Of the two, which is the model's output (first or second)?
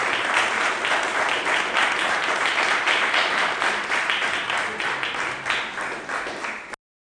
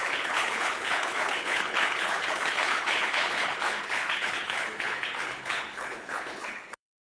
second